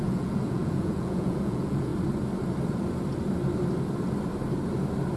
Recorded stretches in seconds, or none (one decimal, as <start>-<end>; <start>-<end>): 1.9-5.2